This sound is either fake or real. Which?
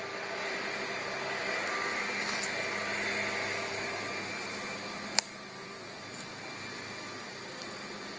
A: real